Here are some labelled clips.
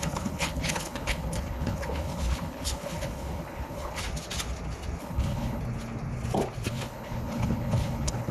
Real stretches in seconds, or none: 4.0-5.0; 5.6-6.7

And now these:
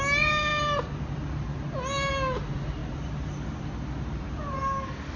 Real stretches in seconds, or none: 0.0-5.2